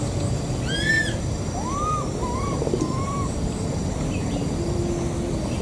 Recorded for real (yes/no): yes